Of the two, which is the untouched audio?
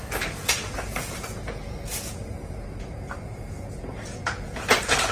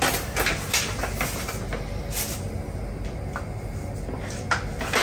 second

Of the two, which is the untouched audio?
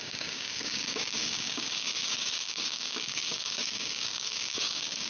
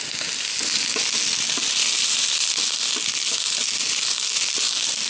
second